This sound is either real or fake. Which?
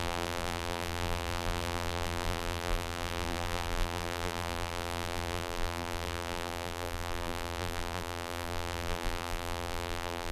fake